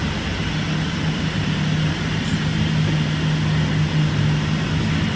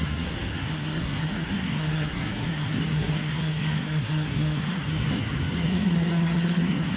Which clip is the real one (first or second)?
first